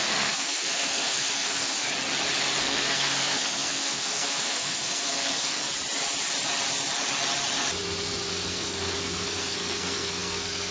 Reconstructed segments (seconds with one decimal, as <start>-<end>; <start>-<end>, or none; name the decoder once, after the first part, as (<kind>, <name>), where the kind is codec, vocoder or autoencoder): 0.0-1.8 (codec, SNAC); 2.6-5.6; 8.3-10.7